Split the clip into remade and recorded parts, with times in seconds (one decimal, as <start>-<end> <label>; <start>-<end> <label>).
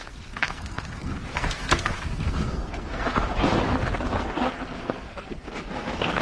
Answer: 0.0-3.5 remade; 3.5-4.1 recorded; 4.1-6.2 remade